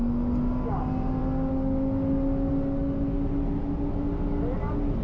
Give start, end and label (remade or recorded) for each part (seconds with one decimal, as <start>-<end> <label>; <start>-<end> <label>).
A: 0.0-5.0 recorded

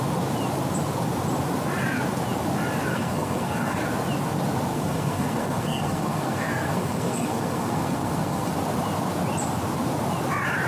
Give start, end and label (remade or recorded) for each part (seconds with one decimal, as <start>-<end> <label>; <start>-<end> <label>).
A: 0.0-2.9 recorded; 2.9-3.8 remade; 3.8-4.7 recorded; 4.7-8.5 remade; 8.5-10.7 recorded

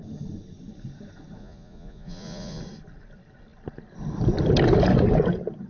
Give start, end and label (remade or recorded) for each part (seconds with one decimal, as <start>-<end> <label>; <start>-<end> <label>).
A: 0.0-1.4 recorded; 1.4-2.6 remade; 2.6-5.7 recorded

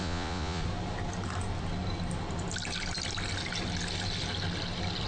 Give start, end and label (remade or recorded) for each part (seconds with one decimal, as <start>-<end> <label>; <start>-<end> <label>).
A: 0.0-0.6 remade; 0.6-5.1 recorded

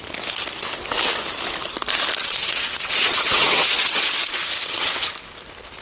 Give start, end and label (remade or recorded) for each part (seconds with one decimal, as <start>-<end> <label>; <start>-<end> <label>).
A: 0.0-2.2 recorded; 2.2-5.1 remade; 5.1-5.8 recorded